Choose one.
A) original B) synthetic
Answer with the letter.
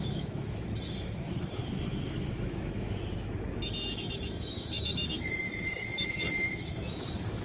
B